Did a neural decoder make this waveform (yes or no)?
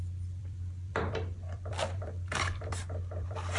yes